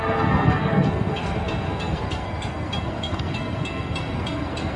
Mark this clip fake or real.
fake